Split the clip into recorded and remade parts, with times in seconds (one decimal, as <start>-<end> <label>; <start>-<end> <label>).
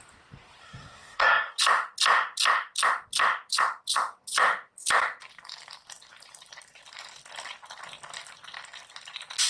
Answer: 0.0-0.6 recorded; 0.6-1.6 remade; 1.6-9.5 recorded